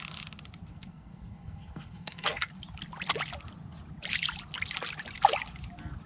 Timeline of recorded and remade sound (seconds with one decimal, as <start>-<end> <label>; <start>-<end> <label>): 0.0-0.7 recorded; 0.7-2.5 remade; 2.5-6.1 recorded